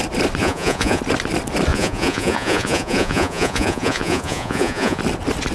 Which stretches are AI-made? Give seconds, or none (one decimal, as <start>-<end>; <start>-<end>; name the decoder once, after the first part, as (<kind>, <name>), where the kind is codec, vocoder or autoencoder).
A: 0.4-1.0 (vocoder, Vocos); 1.7-5.0